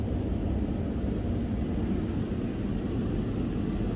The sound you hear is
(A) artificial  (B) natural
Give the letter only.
B